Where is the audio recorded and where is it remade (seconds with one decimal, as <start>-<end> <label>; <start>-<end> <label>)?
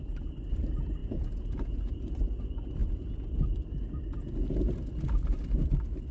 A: 0.0-1.0 recorded; 1.0-2.0 remade; 2.0-6.1 recorded